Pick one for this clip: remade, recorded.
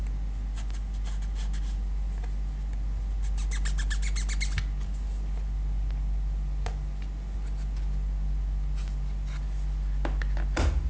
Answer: recorded